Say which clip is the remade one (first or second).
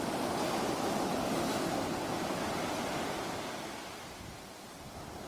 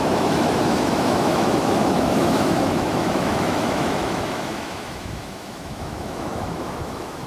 second